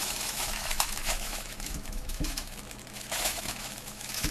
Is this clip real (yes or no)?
no